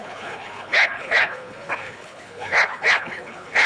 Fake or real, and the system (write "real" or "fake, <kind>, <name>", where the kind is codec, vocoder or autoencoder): fake, codec, HILCodec